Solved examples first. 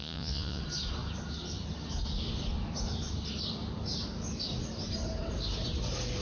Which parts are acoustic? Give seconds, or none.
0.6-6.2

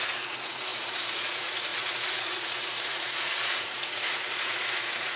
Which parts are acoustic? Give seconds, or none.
none

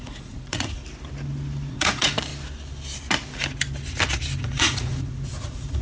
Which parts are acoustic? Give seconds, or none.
0.8-1.7; 2.3-4.4

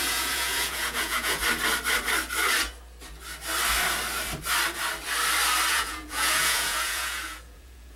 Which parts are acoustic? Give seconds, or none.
1.4-5.7